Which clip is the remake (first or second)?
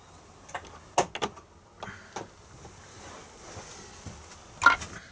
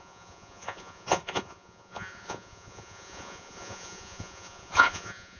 second